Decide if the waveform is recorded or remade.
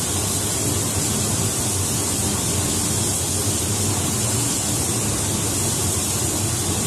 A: recorded